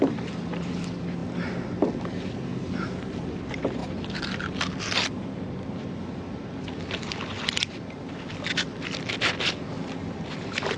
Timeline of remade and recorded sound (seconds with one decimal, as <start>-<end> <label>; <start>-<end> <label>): 0.0-10.8 recorded